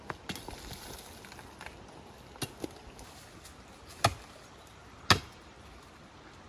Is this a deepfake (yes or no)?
no